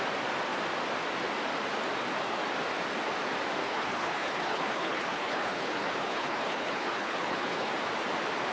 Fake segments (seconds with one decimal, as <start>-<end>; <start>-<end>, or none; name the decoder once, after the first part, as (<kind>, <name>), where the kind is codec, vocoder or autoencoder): 3.6-7.7 (codec, HILCodec)